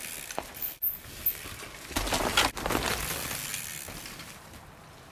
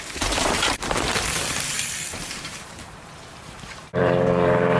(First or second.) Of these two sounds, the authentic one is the first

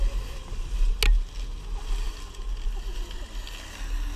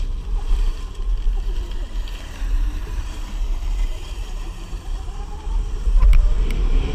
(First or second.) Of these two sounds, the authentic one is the first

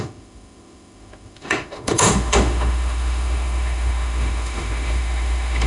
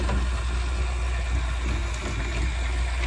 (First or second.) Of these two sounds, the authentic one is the second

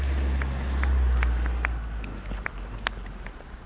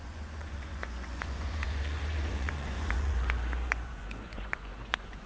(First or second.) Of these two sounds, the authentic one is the first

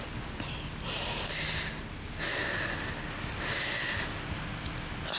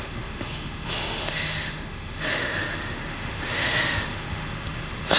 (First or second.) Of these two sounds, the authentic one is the first